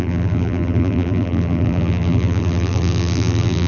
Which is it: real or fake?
fake